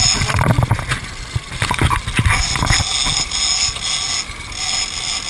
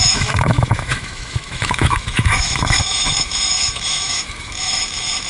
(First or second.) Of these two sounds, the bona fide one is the first